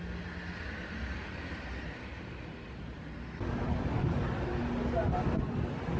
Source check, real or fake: real